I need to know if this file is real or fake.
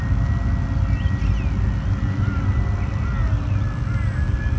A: real